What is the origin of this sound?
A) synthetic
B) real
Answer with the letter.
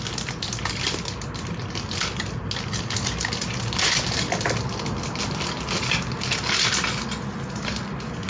B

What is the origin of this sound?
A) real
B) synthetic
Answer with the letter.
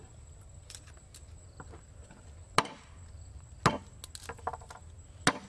A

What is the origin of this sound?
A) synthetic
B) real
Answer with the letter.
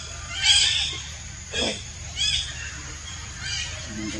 A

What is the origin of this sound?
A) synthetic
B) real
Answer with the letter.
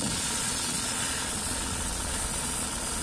A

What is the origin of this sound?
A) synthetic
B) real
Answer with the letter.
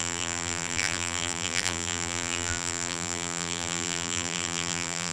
A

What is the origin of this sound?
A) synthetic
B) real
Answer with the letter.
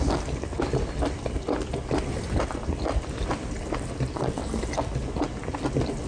B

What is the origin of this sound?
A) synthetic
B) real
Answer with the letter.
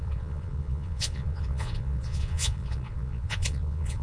A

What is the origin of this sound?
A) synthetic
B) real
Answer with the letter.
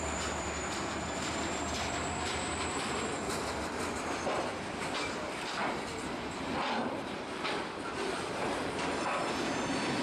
A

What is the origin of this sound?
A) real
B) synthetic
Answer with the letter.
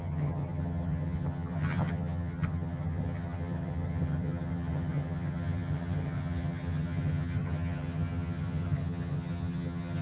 B